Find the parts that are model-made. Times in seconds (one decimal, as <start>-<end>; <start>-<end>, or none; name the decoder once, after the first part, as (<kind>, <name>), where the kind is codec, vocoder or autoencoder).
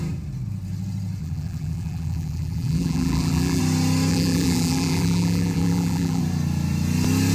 1.2-3.6 (vocoder, BigVGAN v2); 4.1-6.2